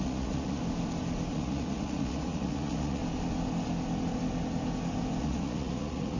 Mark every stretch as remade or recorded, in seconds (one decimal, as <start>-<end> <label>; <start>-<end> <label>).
0.0-0.6 remade; 0.6-1.3 recorded; 1.3-3.0 remade; 3.0-5.2 recorded; 5.2-6.2 remade